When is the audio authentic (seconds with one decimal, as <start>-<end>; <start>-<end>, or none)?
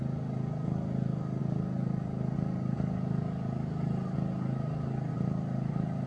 0.0-6.1